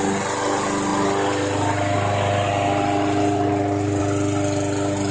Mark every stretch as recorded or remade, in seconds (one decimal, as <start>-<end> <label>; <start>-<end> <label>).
0.0-5.1 recorded